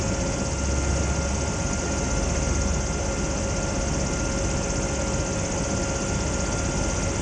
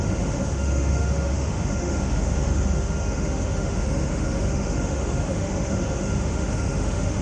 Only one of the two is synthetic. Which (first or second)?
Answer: second